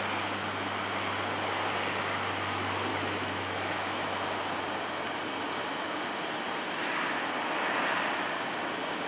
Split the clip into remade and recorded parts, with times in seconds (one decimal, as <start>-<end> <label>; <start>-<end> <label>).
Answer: 0.0-2.9 recorded; 2.9-4.4 remade; 4.4-9.1 recorded